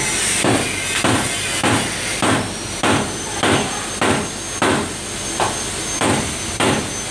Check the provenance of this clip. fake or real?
real